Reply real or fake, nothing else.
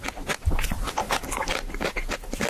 real